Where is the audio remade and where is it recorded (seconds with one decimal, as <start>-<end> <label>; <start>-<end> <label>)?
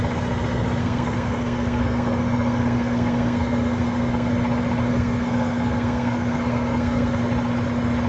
0.0-0.8 recorded; 0.8-4.3 remade; 4.3-4.9 recorded; 4.9-7.2 remade; 7.2-8.1 recorded